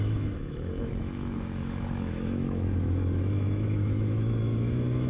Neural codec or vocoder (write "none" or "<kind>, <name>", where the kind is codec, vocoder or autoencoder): autoencoder, DAC-VAE